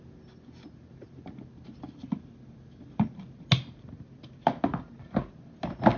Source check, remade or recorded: recorded